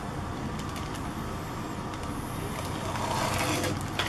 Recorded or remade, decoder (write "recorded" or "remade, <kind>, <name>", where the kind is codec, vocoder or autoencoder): recorded